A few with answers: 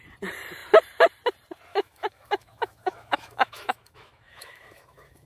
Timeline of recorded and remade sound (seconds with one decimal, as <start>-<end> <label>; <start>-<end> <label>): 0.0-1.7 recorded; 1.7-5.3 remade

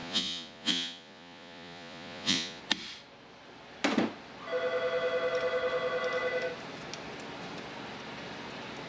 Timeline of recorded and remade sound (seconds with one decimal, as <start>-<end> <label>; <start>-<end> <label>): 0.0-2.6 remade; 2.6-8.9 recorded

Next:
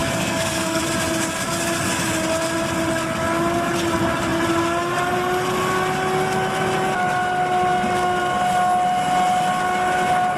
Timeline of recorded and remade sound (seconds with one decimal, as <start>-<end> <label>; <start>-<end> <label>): 0.0-0.8 remade; 0.8-10.4 recorded